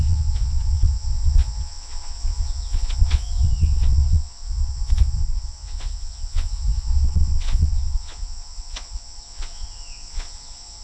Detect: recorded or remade remade